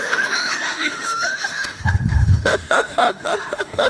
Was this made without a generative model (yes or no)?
no